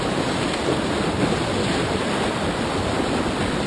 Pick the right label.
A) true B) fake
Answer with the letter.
A